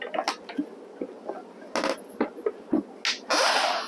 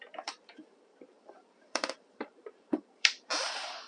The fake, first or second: second